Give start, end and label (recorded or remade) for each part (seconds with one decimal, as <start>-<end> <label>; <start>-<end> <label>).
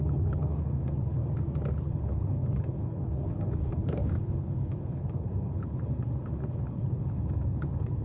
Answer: 0.0-1.2 remade; 1.2-1.8 recorded; 1.8-8.0 remade